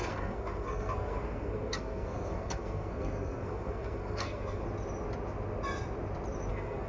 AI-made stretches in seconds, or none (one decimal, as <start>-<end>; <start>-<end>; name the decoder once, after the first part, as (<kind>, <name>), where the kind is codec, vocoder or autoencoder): 0.0-4.6 (codec, SNAC); 6.5-6.9